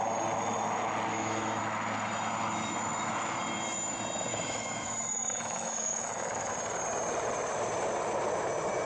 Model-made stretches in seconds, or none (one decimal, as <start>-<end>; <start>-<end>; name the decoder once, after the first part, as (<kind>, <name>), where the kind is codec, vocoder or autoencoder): 1.1-1.6 (autoencoder, DAC-VAE); 4.3-6.5